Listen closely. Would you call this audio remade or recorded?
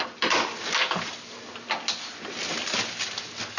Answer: recorded